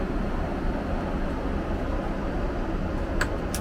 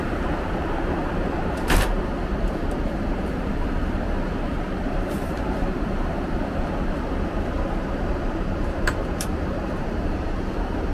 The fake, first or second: second